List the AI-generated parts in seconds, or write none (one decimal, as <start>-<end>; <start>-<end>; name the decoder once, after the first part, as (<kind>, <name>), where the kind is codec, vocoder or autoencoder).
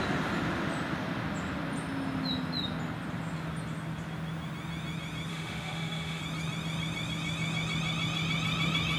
5.3-6.2 (autoencoder, DAC-VAE)